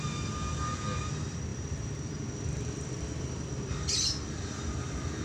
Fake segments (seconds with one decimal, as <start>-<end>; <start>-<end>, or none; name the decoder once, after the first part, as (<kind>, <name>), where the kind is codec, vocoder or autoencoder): 1.5-4.6 (vocoder, BigVGAN v2)

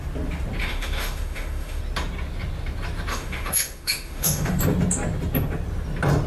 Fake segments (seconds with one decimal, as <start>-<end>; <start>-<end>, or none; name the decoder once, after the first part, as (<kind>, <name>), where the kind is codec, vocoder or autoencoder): 0.6-1.8 (autoencoder, DAC-VAE); 3.1-4.6